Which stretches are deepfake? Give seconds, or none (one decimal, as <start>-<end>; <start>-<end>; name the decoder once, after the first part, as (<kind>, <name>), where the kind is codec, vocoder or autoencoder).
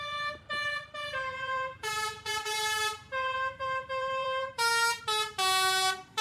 1.3-5.0 (vocoder, BigVGAN v2)